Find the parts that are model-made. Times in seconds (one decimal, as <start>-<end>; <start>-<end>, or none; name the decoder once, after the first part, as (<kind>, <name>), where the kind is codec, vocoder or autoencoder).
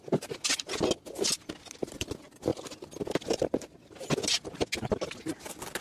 none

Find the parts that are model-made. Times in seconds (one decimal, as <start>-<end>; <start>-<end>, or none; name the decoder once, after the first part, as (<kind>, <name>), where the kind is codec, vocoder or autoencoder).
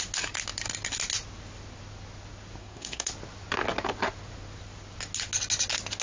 2.6-3.1 (codec, SNAC)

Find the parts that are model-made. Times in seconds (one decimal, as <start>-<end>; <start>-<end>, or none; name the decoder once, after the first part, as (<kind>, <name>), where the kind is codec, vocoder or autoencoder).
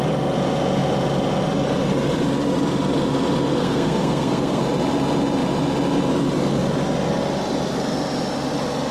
3.6-4.6 (codec, SNAC)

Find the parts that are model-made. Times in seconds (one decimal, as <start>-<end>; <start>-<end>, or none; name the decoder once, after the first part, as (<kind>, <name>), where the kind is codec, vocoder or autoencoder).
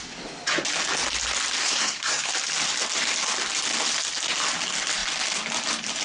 1.6-2.3 (codec, SNAC)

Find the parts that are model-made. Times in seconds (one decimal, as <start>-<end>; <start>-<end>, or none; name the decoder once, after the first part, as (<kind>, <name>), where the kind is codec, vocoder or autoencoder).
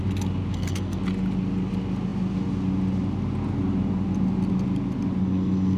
0.5-1.0 (codec, SNAC); 5.2-5.8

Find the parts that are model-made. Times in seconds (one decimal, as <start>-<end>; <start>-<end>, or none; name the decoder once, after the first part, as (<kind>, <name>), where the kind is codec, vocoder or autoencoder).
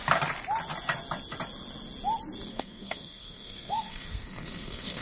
2.5-5.0 (codec, SNAC)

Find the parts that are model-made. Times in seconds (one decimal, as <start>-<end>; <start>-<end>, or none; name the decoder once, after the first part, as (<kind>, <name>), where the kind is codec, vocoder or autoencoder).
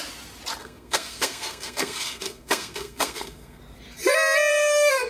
0.6-3.6 (codec, SNAC); 4.5-5.1